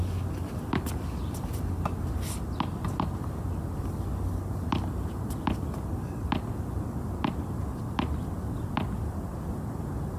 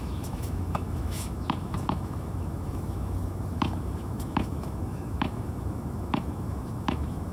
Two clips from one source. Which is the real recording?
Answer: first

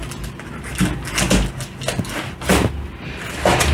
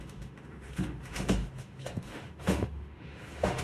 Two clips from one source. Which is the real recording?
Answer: first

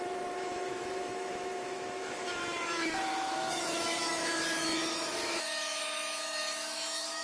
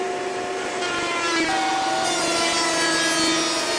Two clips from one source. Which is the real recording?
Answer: second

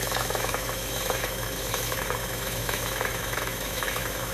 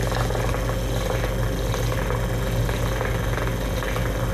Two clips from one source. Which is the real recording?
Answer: second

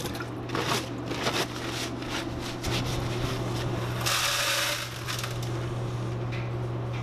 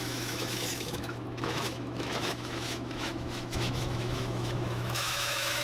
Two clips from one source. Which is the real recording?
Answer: first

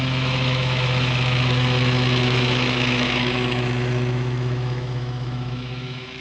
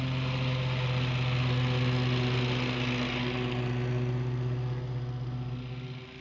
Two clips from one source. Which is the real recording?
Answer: second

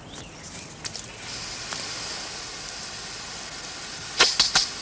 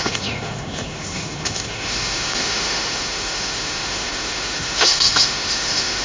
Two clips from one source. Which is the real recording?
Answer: first